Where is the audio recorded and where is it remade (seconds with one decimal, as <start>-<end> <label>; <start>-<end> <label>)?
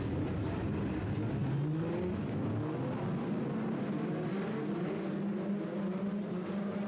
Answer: 0.0-6.9 recorded